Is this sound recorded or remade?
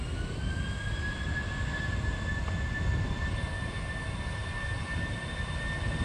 recorded